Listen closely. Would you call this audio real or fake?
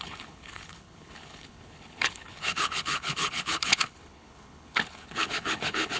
fake